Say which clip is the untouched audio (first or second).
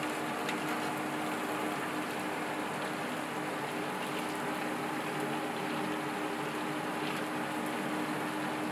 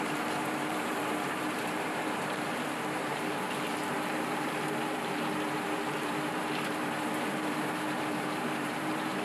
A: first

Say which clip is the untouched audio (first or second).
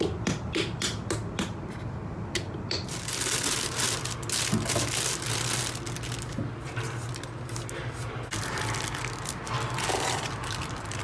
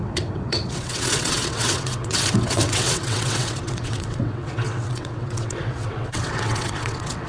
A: first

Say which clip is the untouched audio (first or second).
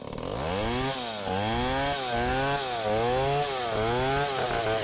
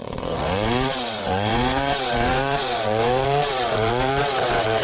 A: first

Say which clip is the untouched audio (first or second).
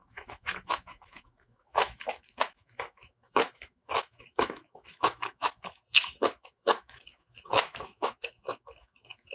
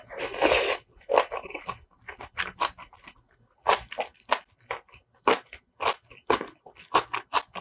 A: second